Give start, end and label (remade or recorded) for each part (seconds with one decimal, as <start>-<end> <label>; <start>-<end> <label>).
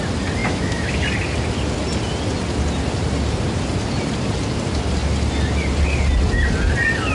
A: 0.0-0.4 recorded; 0.4-1.0 remade; 1.0-7.1 recorded